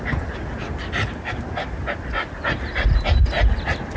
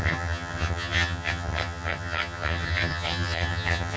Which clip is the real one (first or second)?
first